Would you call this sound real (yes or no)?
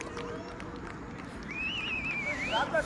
no